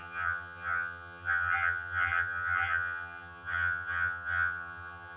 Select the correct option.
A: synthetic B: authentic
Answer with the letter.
A